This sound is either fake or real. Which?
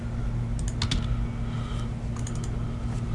real